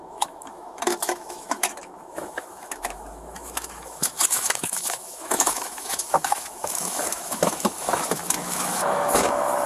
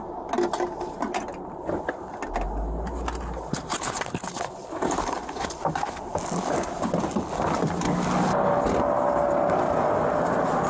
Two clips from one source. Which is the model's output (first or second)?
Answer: first